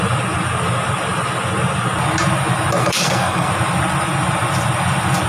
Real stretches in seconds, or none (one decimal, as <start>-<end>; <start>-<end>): 0.0-2.8; 3.5-5.3